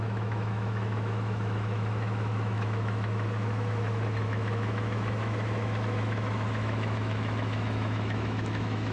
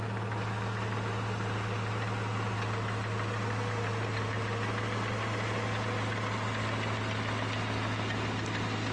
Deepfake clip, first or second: first